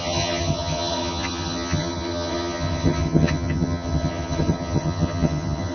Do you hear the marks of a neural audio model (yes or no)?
yes